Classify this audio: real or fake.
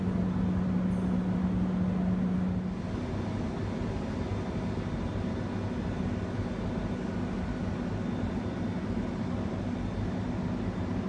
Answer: real